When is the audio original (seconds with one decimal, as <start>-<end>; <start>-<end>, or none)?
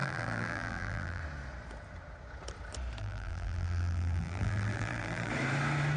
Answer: 1.2-3.0; 5.3-6.0